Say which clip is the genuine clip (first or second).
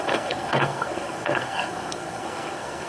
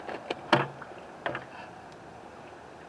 second